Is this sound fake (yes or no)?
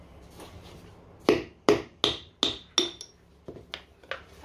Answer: no